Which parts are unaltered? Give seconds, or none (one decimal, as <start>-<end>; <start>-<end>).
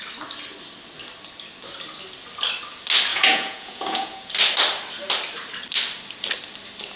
0.0-3.1; 4.3-7.0